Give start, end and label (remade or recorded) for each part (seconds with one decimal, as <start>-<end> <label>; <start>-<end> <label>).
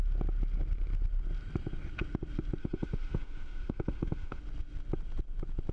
0.0-2.6 recorded; 2.6-4.4 remade; 4.4-5.7 recorded